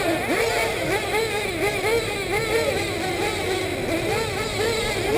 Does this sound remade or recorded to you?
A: recorded